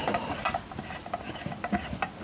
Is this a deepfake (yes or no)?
no